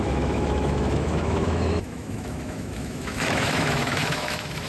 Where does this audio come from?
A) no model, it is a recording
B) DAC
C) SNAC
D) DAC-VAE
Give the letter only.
D